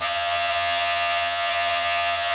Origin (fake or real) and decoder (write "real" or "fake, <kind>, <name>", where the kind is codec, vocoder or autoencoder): fake, vocoder, HiFi-GAN